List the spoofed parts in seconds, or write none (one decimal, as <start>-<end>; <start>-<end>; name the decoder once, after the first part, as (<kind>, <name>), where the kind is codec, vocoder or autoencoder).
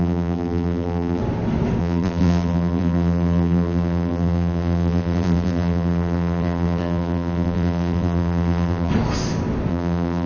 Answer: 0.0-1.2 (vocoder, BigVGAN v2); 1.8-8.9; 9.7-10.3